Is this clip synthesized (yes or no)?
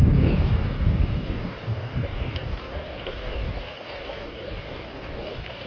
yes